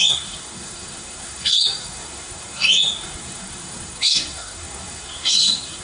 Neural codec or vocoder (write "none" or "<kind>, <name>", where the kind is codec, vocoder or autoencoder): codec, SNAC